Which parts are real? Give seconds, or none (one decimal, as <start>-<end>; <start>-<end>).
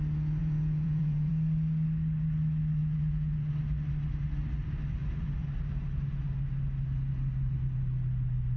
0.0-0.4; 1.3-2.8; 3.5-8.6